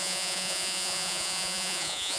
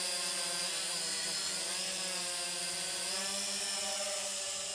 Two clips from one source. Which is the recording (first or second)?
second